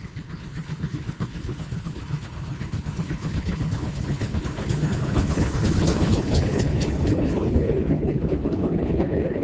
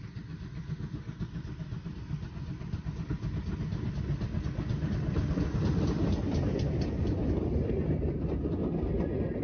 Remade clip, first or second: first